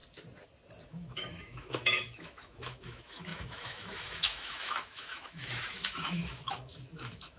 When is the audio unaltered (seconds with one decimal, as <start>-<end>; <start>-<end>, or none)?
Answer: 0.0-0.9